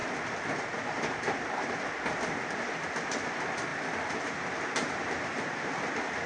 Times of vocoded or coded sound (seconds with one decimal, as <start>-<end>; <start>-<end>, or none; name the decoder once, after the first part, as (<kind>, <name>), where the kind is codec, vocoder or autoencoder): 3.7-5.8 (vocoder, BigVGAN v2)